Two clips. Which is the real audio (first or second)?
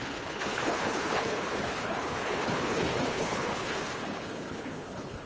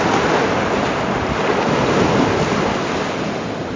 second